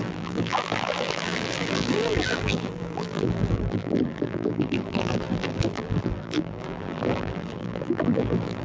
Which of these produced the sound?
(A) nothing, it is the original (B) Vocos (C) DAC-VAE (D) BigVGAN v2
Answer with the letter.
D